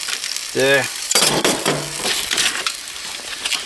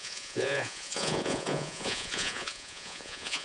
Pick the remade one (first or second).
second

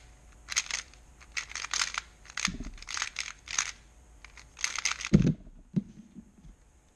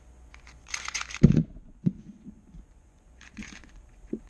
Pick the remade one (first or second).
second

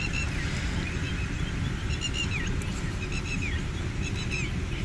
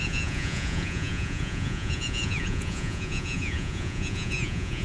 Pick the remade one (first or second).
second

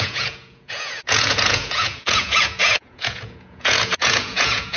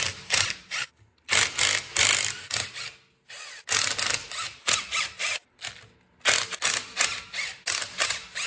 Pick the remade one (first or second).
first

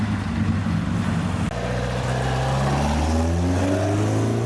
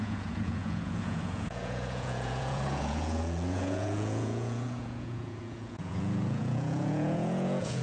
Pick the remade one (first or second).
second